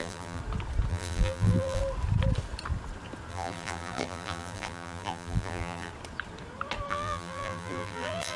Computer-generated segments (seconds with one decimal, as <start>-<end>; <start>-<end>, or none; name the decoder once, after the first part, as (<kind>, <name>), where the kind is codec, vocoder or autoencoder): 0.0-0.4 (vocoder, BigVGAN v2); 0.9-1.8; 3.3-5.9; 6.9-8.4